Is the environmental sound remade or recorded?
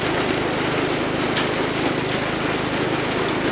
recorded